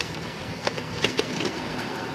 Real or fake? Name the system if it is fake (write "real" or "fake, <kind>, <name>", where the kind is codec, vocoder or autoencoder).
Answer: fake, codec, SNAC